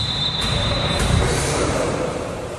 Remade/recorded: remade